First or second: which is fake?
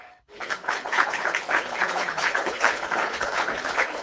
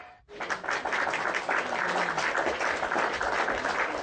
first